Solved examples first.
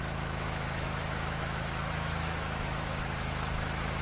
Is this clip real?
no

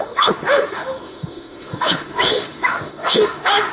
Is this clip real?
no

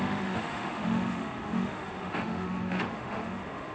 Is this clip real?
no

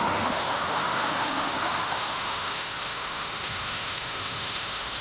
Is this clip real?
no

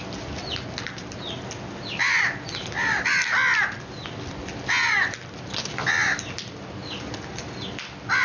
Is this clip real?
yes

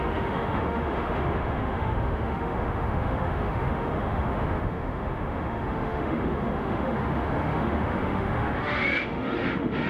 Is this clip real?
no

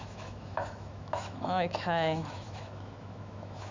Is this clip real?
no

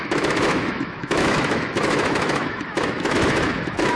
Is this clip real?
no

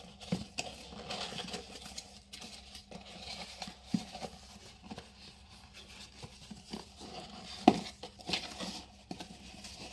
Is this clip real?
yes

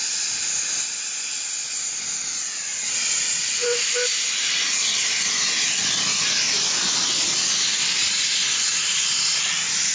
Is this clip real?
yes